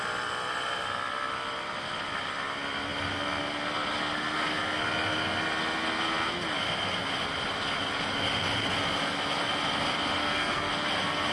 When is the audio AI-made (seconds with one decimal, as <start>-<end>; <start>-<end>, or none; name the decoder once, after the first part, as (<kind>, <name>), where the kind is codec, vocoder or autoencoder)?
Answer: 10.2-10.7 (codec, SNAC)